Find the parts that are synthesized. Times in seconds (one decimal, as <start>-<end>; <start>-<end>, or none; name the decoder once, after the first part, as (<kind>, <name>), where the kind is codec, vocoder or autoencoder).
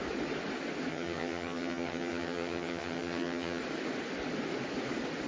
0.9-3.6 (vocoder, HiFi-GAN)